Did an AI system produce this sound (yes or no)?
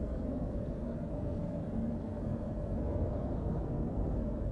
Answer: yes